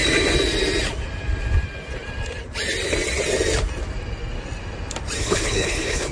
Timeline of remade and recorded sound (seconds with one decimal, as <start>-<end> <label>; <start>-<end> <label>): 0.0-5.2 recorded; 5.2-6.1 remade